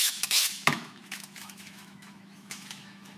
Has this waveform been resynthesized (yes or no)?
yes